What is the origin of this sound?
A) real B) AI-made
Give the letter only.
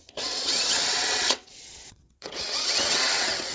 B